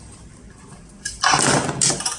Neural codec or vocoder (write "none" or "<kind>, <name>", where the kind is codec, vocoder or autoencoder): none